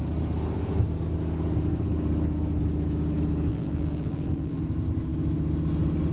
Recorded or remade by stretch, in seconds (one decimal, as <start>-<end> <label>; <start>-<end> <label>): 0.0-3.5 recorded; 3.5-4.6 remade; 4.6-6.1 recorded